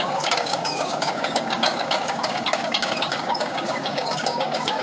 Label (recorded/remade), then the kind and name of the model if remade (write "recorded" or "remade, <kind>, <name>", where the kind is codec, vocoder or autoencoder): remade, codec, DAC